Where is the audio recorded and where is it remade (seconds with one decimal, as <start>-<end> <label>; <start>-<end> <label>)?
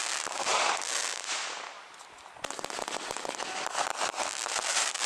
0.0-3.9 recorded; 3.9-5.1 remade